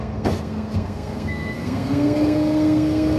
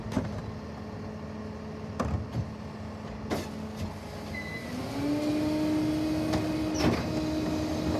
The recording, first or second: second